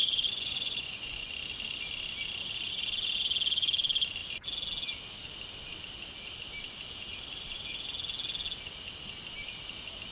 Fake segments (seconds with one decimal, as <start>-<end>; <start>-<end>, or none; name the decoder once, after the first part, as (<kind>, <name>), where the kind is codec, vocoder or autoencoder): 0.0-1.3 (vocoder, Vocos)